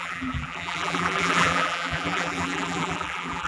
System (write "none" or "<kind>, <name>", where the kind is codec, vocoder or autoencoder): vocoder, BigVGAN v2